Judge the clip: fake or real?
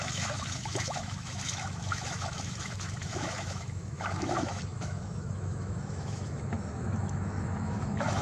fake